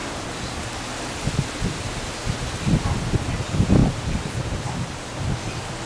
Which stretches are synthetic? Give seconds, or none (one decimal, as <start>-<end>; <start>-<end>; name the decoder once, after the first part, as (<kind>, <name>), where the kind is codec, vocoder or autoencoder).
3.8-5.2 (vocoder, BigVGAN v2)